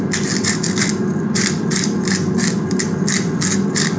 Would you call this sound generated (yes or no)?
no